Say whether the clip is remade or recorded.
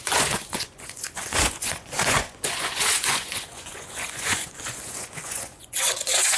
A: remade